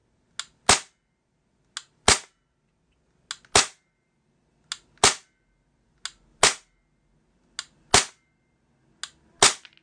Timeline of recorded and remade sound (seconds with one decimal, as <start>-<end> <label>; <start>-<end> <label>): 0.0-9.8 recorded